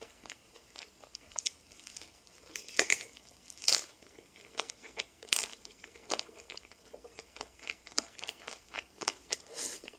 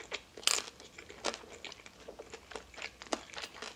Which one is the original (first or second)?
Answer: second